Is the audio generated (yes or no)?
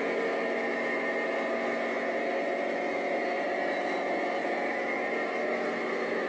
no